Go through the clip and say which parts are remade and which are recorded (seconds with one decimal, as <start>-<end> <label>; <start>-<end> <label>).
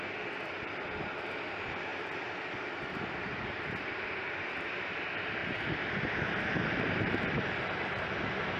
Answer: 0.0-8.6 recorded